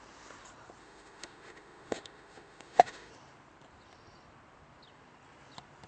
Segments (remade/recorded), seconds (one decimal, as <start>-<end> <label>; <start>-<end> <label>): 0.0-0.8 recorded; 0.8-3.1 remade; 3.1-5.9 recorded